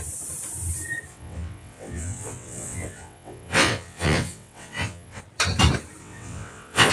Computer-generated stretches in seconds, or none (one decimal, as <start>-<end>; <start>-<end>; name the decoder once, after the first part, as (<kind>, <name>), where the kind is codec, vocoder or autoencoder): 1.1-5.2 (vocoder, WaveNeXt); 6.0-6.9